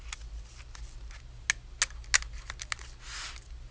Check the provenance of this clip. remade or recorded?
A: recorded